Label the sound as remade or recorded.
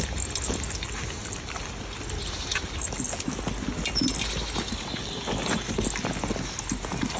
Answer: recorded